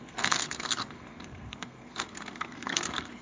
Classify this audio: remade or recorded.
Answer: remade